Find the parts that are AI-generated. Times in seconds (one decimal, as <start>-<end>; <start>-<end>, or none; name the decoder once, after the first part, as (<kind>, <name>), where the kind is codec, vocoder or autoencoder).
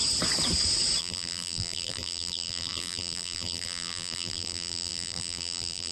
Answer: 1.0-5.9 (vocoder, BigVGAN v2)